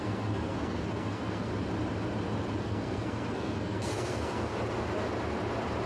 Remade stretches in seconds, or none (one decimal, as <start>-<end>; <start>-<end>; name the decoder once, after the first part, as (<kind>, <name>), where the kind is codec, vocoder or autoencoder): 0.0-1.5 (codec, SNAC); 2.6-4.5